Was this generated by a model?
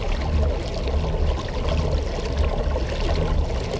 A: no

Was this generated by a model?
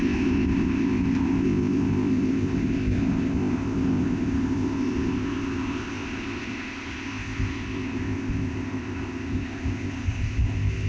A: yes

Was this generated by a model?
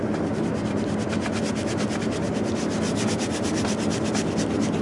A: no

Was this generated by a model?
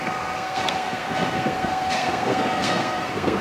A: yes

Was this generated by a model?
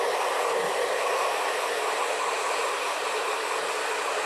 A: no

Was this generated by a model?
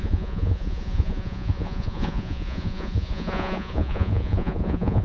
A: yes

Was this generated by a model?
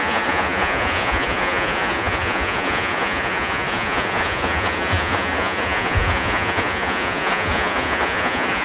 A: yes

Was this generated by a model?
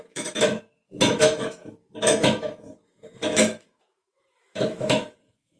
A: yes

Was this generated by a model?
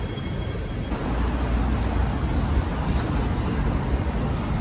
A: no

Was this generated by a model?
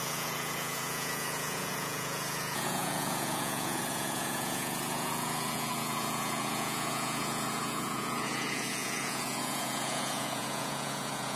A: yes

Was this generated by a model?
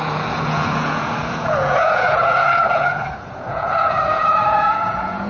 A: yes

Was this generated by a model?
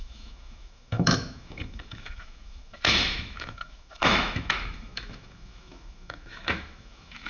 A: yes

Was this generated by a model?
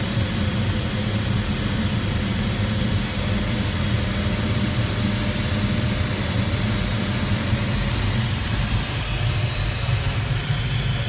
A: no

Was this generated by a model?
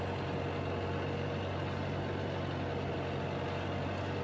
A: no